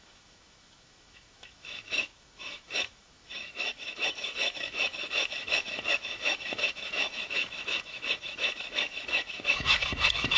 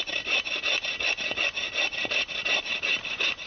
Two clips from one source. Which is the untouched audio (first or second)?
second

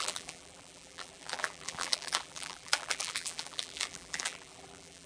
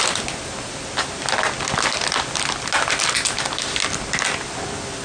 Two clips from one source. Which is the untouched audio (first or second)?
second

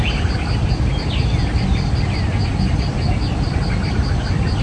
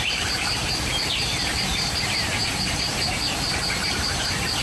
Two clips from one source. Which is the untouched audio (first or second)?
first